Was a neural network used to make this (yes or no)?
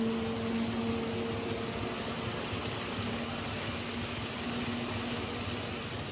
no